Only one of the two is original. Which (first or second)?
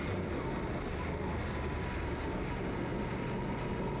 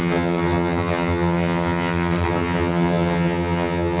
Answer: first